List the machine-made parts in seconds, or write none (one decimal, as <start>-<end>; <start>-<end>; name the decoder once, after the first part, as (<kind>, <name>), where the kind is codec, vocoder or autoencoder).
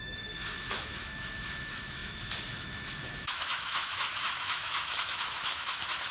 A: 0.0-6.1 (autoencoder, DAC-VAE)